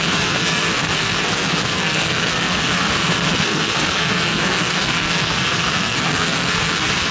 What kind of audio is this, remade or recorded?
remade